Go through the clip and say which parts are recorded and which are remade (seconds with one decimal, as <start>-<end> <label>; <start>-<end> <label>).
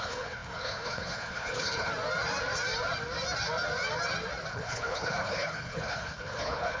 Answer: 0.0-1.9 remade; 1.9-4.5 recorded; 4.5-6.8 remade